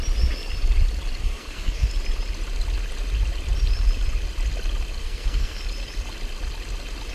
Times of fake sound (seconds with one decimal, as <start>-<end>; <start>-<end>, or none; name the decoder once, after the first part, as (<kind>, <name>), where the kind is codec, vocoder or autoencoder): 1.2-1.9 (codec, SNAC); 5.0-5.6